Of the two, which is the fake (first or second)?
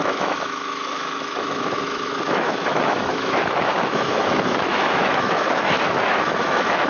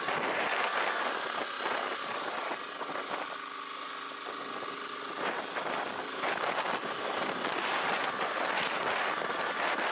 first